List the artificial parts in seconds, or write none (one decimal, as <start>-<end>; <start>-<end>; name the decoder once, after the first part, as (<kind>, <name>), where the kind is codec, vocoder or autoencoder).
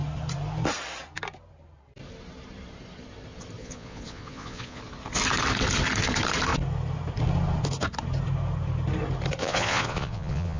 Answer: 3.6-4.8 (vocoder, Vocos); 9.4-10.6